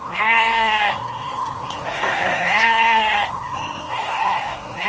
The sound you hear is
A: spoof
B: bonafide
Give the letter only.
A